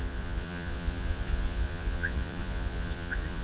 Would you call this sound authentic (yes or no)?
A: no